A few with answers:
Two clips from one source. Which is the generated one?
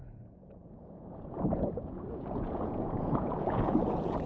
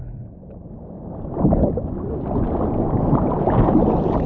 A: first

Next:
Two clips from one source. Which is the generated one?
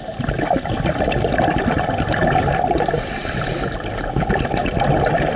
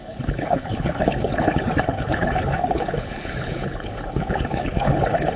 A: second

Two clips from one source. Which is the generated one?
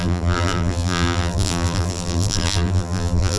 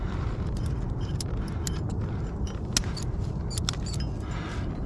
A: first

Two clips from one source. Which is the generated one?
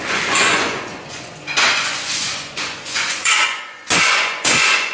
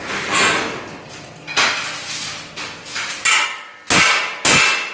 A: first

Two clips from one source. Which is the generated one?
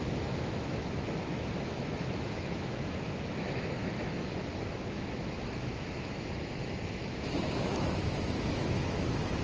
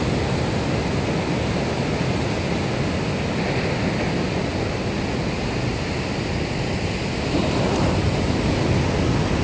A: first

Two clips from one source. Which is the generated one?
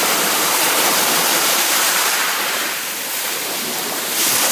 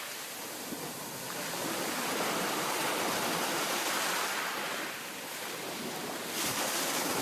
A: first